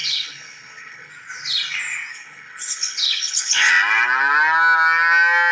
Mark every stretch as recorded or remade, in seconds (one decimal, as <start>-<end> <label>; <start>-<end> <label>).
0.0-1.1 remade; 1.1-2.1 recorded; 2.1-3.7 remade; 3.7-5.5 recorded